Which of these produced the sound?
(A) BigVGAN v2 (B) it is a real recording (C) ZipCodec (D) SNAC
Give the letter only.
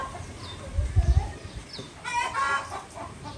B